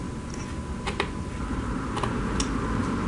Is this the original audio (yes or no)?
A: yes